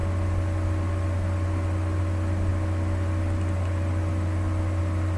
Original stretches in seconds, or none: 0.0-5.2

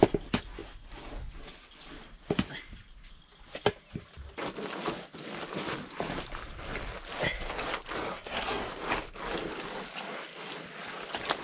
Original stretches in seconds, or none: 0.0-8.1; 8.7-11.4

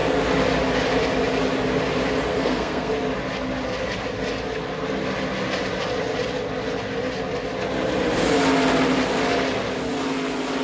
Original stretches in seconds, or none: 0.0-2.3; 2.9-10.6

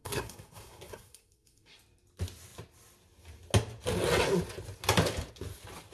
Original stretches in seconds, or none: 1.8-5.9